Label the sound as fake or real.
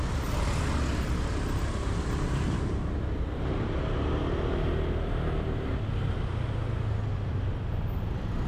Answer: real